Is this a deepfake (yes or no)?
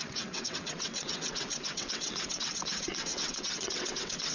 yes